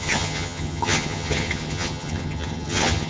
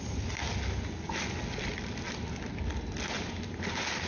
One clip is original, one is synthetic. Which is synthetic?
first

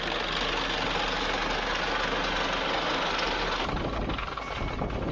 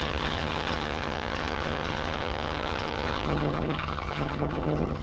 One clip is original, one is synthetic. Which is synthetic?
second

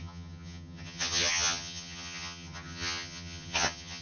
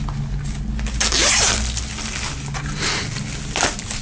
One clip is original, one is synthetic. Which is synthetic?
first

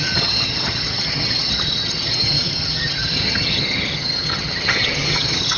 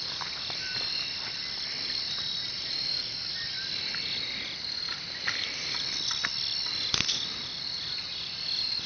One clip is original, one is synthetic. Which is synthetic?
first